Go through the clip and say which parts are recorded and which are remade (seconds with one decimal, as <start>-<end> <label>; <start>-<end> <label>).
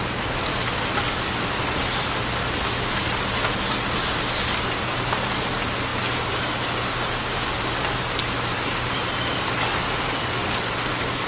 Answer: 0.0-11.3 recorded